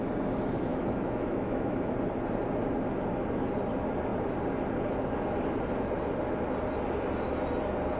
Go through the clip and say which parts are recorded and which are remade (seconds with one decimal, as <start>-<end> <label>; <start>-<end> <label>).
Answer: 0.0-0.7 recorded; 0.7-1.9 remade; 1.9-8.0 recorded